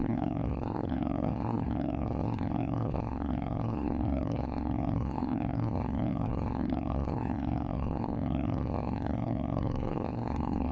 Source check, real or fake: fake